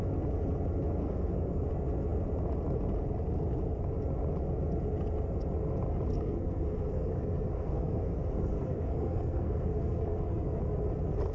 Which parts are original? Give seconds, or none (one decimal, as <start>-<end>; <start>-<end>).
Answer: 0.0-1.0; 1.7-6.1; 10.6-11.3